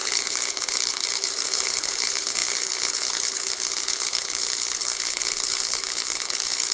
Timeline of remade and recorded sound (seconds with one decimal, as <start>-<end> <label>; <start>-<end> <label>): 0.0-6.7 remade